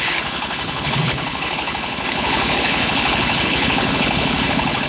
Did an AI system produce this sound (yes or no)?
yes